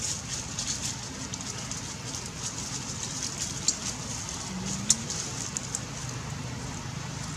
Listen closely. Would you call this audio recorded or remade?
recorded